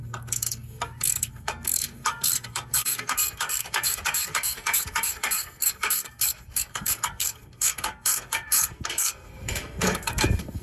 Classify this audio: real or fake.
fake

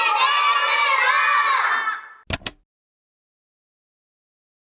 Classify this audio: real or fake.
real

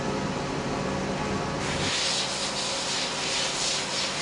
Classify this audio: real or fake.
real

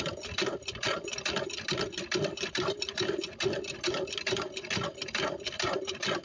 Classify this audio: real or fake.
real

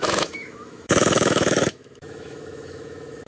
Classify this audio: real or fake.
fake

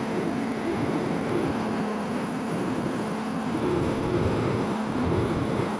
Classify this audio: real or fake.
fake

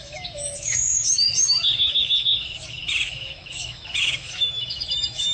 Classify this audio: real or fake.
fake